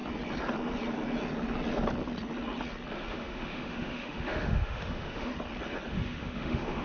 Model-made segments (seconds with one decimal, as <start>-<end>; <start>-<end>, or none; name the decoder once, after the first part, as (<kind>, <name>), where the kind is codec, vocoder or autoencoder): 3.1-5.3 (autoencoder, DAC-VAE); 5.9-6.8